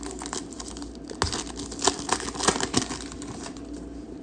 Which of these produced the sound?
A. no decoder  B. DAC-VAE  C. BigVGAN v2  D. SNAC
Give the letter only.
A